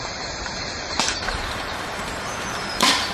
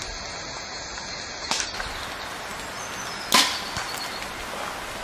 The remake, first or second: first